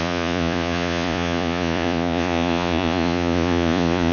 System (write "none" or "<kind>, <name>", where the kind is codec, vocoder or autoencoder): vocoder, Vocos